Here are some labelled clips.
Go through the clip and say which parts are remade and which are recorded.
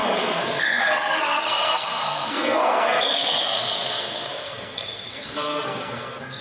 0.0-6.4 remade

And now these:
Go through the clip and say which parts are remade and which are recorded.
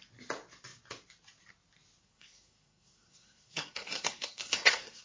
0.0-2.0 recorded; 2.0-5.0 remade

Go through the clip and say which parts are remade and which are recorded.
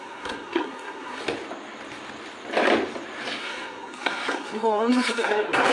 0.0-1.2 remade; 1.2-3.4 recorded; 3.4-5.7 remade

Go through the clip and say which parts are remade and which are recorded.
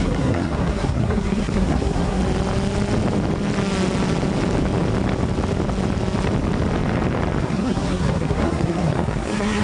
0.0-2.2 remade; 2.2-7.4 recorded; 7.4-9.6 remade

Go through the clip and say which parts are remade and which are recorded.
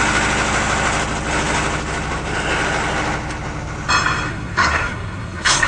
0.0-4.3 recorded; 4.3-5.7 remade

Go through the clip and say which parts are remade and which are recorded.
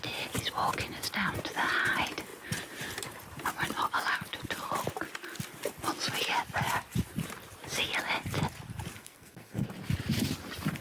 0.0-9.0 recorded; 9.0-9.7 remade; 9.7-10.8 recorded